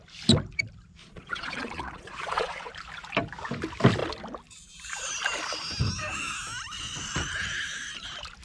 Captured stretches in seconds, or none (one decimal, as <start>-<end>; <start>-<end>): 0.0-1.0; 2.7-8.4